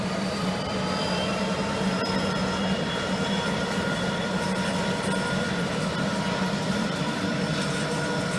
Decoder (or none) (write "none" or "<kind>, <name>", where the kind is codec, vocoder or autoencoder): vocoder, BigVGAN v2